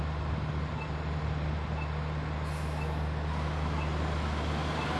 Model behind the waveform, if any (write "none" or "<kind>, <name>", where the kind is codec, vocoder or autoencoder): none